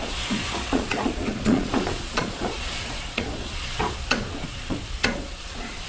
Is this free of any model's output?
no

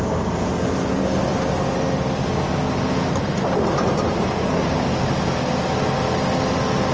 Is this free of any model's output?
yes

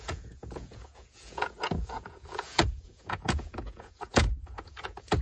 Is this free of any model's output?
no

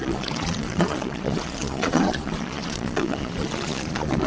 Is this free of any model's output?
no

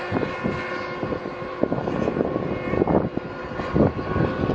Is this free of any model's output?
yes